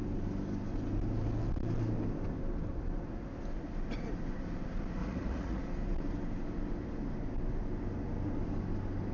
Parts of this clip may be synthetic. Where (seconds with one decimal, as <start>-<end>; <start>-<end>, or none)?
5.0-5.6